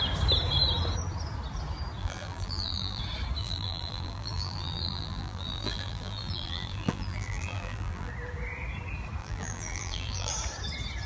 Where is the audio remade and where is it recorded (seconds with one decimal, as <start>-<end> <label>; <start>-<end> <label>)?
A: 0.0-2.0 recorded; 2.0-3.0 remade; 3.0-3.4 recorded; 3.4-8.1 remade; 8.1-9.2 recorded; 9.2-10.3 remade; 10.3-11.1 recorded